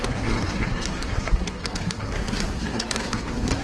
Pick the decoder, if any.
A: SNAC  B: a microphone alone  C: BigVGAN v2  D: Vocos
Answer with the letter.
A